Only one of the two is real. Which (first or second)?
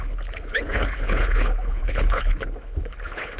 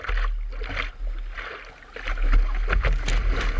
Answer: second